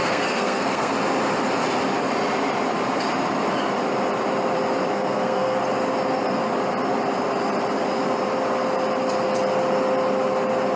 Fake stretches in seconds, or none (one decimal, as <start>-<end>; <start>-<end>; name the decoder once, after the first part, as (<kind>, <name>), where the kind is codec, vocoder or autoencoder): 0.0-0.9 (codec, SNAC); 4.9-5.6